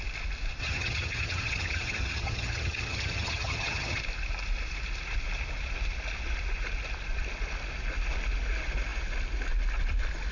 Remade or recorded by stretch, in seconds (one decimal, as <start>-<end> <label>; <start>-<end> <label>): 0.0-0.6 recorded; 0.6-4.0 remade; 4.0-10.3 recorded